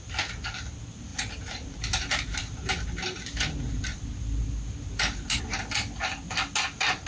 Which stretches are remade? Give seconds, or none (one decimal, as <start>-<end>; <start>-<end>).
1.1-5.4